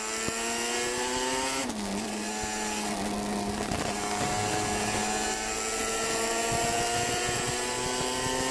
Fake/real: real